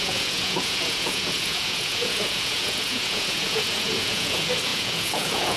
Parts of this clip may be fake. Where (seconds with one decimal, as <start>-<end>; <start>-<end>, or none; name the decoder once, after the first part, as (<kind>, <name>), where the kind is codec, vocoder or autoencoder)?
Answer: 0.0-5.6 (vocoder, Vocos)